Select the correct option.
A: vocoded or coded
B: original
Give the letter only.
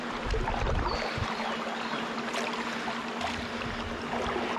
B